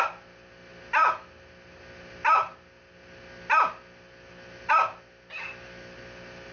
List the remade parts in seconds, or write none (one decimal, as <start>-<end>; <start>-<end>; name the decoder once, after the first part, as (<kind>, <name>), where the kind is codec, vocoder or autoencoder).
none